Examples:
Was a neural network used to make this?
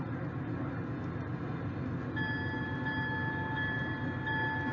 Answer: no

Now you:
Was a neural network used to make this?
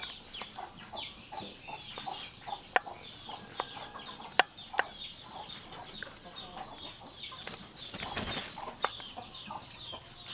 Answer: no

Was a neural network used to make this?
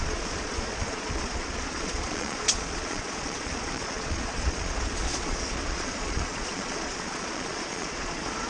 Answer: yes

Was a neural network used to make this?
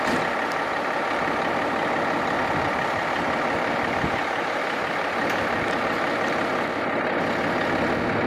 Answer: no